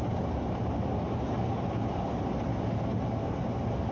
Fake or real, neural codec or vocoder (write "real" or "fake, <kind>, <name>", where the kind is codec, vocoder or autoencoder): real